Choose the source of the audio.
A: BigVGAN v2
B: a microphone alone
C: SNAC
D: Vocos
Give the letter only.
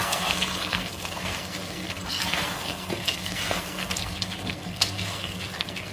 C